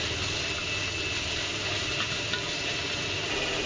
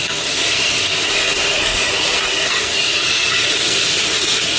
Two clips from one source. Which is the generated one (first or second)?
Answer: second